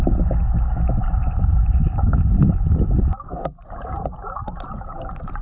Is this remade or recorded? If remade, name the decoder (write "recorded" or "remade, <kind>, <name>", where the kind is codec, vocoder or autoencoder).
recorded